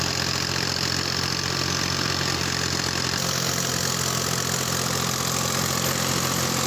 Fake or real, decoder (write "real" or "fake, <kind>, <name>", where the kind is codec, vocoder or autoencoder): real